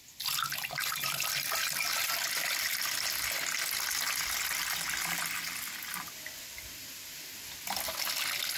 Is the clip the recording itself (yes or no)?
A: yes